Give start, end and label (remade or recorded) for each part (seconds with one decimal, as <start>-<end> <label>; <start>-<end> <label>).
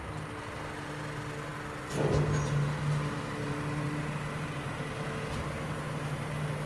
0.0-6.7 recorded